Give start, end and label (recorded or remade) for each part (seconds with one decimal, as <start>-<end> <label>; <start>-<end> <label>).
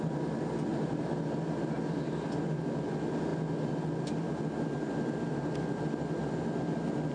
0.0-7.1 recorded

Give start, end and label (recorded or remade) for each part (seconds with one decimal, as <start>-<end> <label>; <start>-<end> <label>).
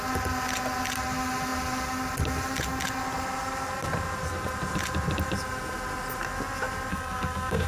0.0-6.9 recorded; 6.9-7.7 remade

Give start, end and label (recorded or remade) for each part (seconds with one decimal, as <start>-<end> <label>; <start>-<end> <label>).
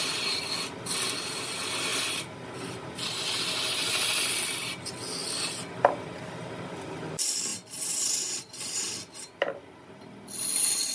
0.0-10.9 recorded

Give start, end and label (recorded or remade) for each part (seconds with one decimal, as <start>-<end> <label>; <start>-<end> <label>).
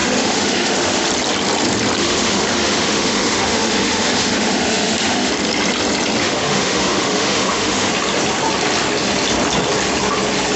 0.0-1.1 remade; 1.1-2.0 recorded; 2.0-5.3 remade; 5.3-6.2 recorded; 6.2-7.9 remade; 7.9-10.6 recorded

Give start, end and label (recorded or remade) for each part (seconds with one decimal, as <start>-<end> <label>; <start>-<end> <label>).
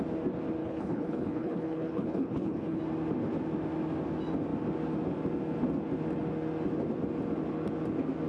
0.0-0.6 recorded; 0.6-2.8 remade; 2.8-8.3 recorded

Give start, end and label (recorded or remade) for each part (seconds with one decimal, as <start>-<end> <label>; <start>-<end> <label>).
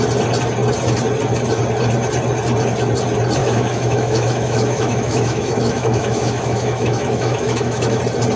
0.0-3.4 recorded; 3.4-8.0 remade; 8.0-8.4 recorded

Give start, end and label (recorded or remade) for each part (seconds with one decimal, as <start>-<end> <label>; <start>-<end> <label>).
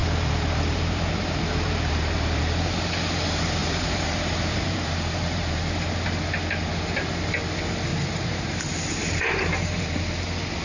0.0-2.4 remade; 2.4-3.6 recorded; 3.6-5.6 remade; 5.6-7.9 recorded; 7.9-10.0 remade; 10.0-10.6 recorded